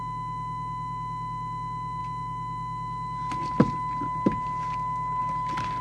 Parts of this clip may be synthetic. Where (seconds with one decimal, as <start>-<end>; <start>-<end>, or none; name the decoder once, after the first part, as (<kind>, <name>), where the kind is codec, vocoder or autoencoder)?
none